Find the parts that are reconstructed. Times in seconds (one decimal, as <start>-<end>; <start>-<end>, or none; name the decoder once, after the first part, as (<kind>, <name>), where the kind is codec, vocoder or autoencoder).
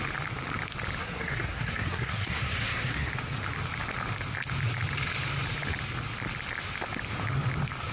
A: 1.0-3.1 (codec, SNAC)